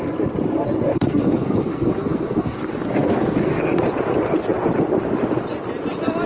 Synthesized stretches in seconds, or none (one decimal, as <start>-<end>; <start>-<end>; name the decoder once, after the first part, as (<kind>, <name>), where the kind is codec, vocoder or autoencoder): 0.9-3.6 (codec, SNAC)